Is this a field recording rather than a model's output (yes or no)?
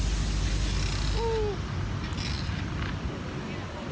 yes